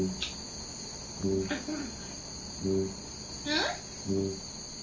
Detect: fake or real real